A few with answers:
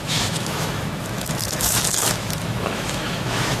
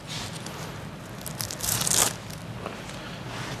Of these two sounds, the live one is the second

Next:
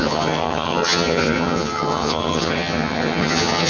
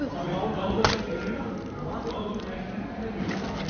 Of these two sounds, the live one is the second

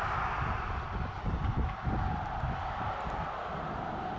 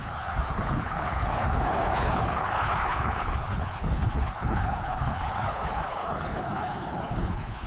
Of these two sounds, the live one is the first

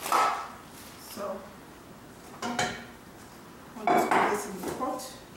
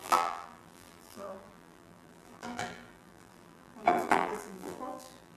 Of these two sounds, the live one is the first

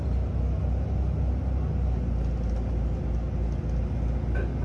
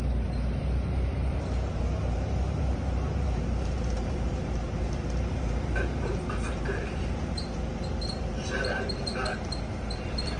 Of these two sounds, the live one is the first